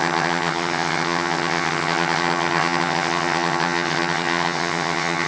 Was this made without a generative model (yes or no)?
no